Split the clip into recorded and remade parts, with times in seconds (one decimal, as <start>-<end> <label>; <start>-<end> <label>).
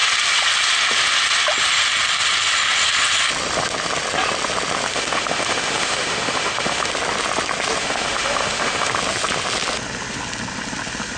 0.0-4.9 recorded; 4.9-6.9 remade; 6.9-7.8 recorded; 7.8-8.9 remade; 8.9-11.2 recorded